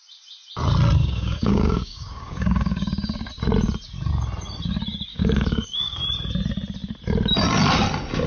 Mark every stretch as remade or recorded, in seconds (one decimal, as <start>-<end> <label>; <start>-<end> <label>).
0.0-1.0 recorded; 1.0-3.3 remade; 3.3-5.1 recorded; 5.1-6.0 remade; 6.0-8.3 recorded